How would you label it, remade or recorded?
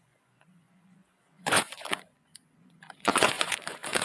remade